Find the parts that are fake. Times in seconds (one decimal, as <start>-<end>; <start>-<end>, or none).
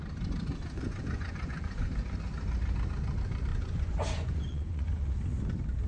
0.5-1.9; 3.5-5.1